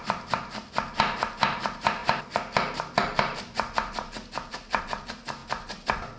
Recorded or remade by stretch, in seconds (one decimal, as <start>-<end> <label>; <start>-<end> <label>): 0.0-5.4 remade; 5.4-6.2 recorded